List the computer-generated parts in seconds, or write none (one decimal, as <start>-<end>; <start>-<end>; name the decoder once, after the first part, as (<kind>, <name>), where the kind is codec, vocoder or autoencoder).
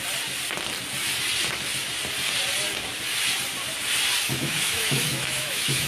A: 4.3-5.9 (autoencoder, DAC-VAE)